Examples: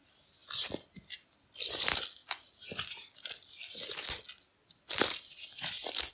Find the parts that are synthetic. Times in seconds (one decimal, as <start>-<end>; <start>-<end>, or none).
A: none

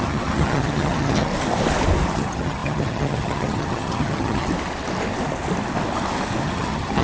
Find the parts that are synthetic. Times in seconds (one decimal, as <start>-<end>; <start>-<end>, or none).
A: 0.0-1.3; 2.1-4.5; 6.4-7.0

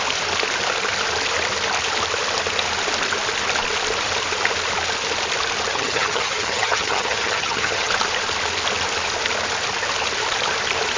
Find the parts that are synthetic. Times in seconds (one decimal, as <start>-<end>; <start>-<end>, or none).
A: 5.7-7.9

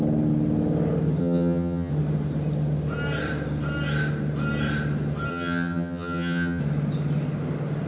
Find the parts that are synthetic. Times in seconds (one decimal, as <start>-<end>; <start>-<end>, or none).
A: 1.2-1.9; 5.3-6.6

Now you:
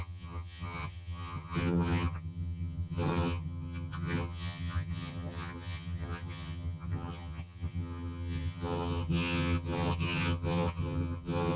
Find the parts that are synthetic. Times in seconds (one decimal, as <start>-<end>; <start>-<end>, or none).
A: 0.0-11.6